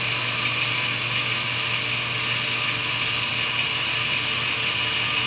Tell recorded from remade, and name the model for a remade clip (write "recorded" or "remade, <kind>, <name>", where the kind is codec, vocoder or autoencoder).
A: recorded